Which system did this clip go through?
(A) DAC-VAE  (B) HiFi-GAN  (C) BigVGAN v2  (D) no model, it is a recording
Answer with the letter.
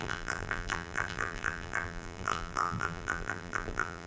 C